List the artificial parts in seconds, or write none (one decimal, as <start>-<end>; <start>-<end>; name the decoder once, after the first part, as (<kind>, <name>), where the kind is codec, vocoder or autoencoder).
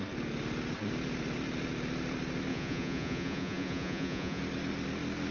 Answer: 2.5-4.4 (vocoder, Vocos)